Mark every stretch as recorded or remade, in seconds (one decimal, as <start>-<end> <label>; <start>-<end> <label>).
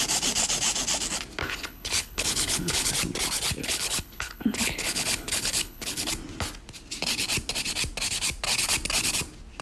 0.0-1.4 recorded; 1.4-2.9 remade; 2.9-3.6 recorded; 3.6-6.1 remade; 6.1-9.6 recorded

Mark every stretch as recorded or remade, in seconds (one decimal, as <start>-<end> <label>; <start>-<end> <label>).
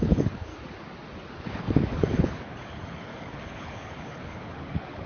0.0-0.5 remade; 0.5-1.4 recorded; 1.4-5.1 remade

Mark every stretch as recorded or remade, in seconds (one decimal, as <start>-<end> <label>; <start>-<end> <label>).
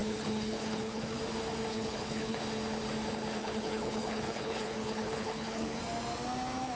0.0-1.2 remade; 1.2-1.7 recorded; 1.7-2.4 remade; 2.4-3.4 recorded; 3.4-5.8 remade; 5.8-6.8 recorded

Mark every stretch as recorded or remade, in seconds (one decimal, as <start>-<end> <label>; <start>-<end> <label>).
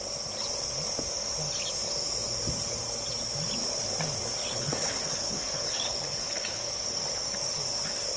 0.0-4.4 recorded; 4.4-6.9 remade; 6.9-8.2 recorded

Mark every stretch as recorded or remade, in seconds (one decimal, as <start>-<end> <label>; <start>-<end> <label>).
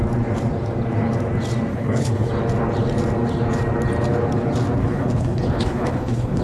0.0-1.7 recorded; 1.7-2.3 remade; 2.3-4.8 recorded; 4.8-6.4 remade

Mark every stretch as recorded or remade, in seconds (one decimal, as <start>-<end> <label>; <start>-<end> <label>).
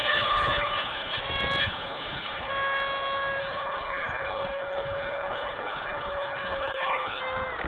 0.0-1.2 remade; 1.2-1.6 recorded; 1.6-2.5 remade; 2.5-3.4 recorded; 3.4-7.2 remade; 7.2-7.7 recorded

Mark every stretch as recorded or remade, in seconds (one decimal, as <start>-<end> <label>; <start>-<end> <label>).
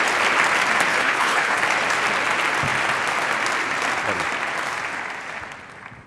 0.0-0.9 recorded; 0.9-1.6 remade; 1.6-6.1 recorded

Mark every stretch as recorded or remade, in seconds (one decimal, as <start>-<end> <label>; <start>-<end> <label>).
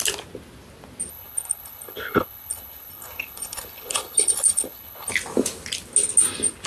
0.0-1.1 recorded; 1.1-5.1 remade; 5.1-6.7 recorded